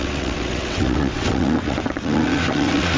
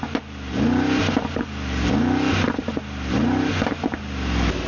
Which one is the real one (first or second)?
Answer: second